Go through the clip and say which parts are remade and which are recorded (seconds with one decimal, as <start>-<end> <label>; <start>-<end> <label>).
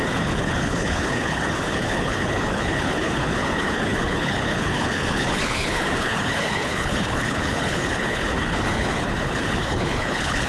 0.0-10.5 remade